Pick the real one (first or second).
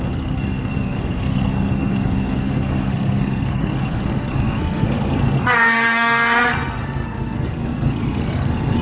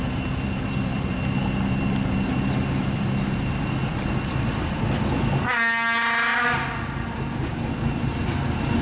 second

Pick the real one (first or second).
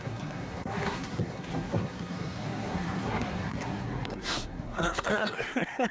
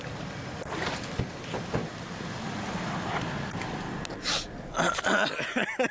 second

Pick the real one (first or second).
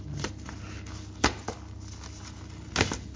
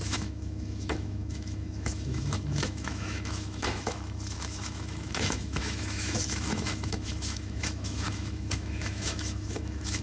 first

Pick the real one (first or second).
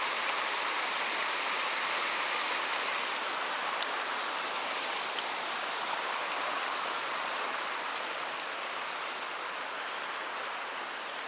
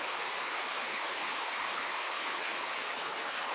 first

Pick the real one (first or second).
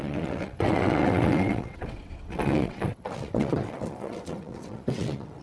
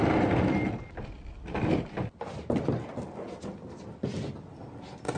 second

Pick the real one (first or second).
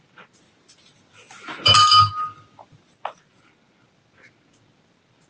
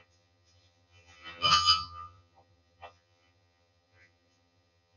first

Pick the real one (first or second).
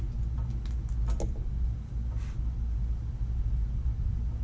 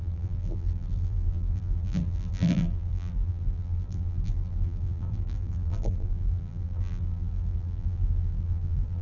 first